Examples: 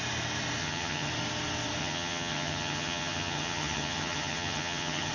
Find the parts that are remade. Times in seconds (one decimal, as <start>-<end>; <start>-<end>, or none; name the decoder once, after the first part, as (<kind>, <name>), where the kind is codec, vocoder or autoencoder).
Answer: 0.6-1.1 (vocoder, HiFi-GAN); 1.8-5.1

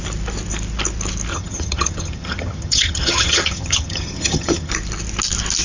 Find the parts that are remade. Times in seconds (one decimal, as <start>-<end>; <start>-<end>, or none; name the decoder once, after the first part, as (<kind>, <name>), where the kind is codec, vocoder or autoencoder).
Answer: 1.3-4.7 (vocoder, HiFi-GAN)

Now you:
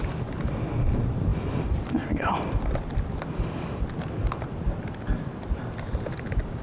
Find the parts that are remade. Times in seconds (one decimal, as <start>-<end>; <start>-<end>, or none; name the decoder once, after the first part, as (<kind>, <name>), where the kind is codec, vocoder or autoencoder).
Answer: none

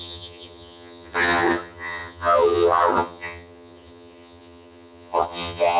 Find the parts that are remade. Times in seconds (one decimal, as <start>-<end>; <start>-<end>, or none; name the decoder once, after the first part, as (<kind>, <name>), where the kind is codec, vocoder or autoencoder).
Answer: 0.0-5.8 (vocoder, HiFi-GAN)

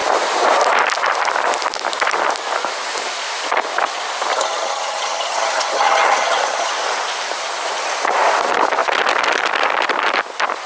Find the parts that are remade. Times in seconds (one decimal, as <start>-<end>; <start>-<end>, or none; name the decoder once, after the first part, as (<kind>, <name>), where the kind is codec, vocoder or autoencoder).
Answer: 4.3-6.7 (vocoder, HiFi-GAN)

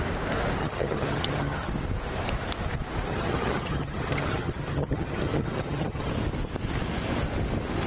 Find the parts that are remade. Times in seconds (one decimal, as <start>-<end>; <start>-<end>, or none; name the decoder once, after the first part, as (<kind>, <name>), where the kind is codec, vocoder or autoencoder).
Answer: 0.6-1.7 (vocoder, HiFi-GAN); 3.1-6.1

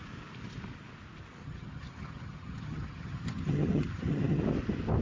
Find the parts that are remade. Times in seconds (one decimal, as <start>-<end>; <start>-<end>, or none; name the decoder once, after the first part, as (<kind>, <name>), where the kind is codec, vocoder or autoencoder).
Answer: 1.4-4.4 (vocoder, HiFi-GAN)